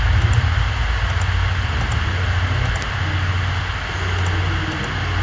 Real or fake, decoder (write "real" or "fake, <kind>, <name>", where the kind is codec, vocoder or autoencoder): real